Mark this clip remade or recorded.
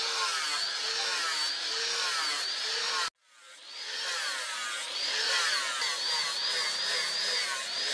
recorded